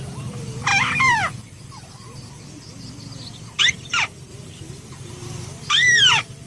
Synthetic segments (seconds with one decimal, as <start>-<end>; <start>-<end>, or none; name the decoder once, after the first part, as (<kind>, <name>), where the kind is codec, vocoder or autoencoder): 0.0-0.7 (vocoder, BigVGAN v2); 3.6-6.5